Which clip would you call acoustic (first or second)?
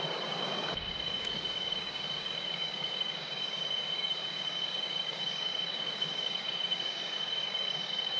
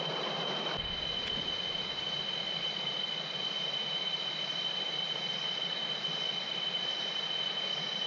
second